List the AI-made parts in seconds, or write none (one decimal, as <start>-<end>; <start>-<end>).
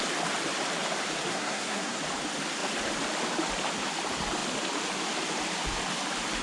1.3-2.0